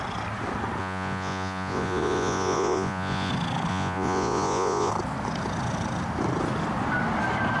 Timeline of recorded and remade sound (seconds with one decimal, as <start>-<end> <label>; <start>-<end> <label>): 0.0-0.8 recorded; 0.8-3.3 remade; 3.3-3.7 recorded; 3.7-4.9 remade; 4.9-7.6 recorded